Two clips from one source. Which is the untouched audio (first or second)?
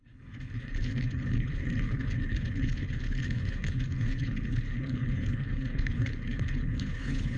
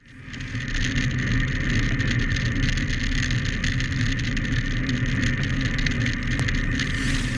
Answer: second